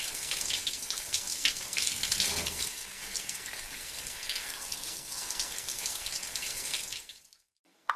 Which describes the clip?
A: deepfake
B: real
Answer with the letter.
A